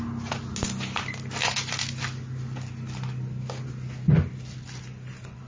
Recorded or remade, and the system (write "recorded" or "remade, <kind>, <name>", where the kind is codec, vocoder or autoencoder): recorded